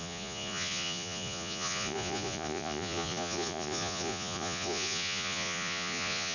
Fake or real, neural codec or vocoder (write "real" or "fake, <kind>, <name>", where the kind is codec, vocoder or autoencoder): fake, vocoder, Vocos